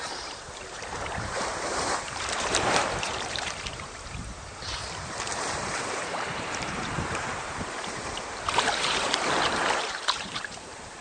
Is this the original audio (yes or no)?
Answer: no